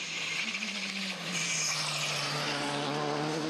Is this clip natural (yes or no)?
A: yes